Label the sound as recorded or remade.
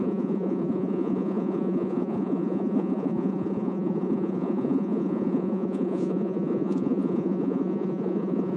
remade